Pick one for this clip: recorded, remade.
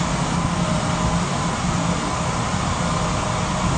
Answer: recorded